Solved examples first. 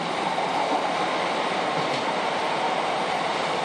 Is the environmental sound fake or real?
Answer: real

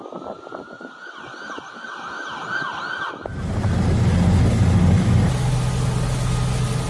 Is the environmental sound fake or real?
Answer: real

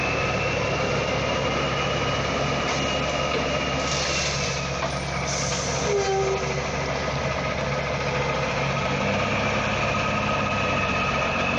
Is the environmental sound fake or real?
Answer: real